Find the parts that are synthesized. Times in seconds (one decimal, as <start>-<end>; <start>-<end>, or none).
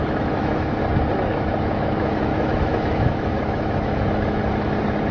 0.0-0.7; 1.3-4.4